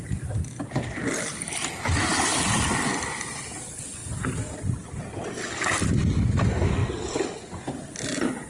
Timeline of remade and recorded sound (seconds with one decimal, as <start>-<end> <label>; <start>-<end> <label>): 0.0-6.8 recorded; 6.8-8.5 remade